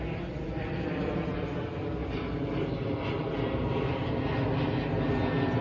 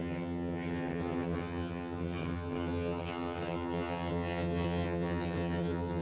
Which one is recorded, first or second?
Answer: first